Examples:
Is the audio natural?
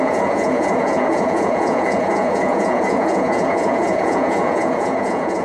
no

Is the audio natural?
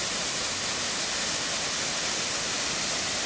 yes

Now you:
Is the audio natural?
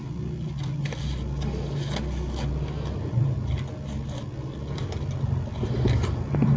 yes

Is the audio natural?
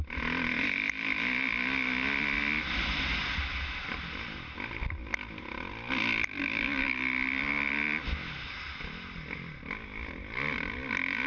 yes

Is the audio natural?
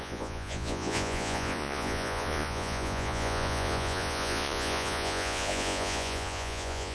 no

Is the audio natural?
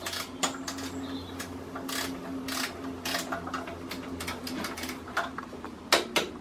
yes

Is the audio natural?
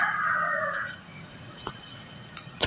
no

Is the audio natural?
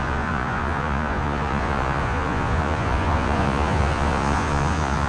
no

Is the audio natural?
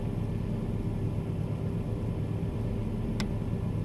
yes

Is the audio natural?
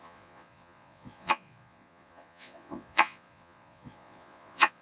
no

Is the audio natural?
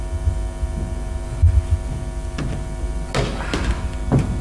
yes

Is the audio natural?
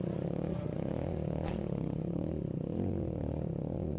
no